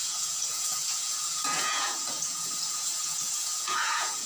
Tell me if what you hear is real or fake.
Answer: fake